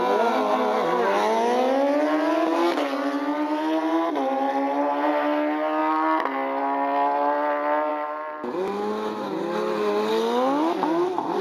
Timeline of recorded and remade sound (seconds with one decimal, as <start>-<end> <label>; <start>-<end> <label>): 0.0-11.4 recorded